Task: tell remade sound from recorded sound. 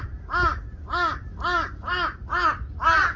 recorded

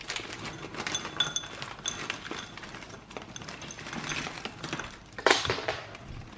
recorded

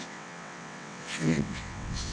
remade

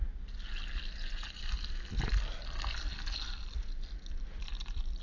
recorded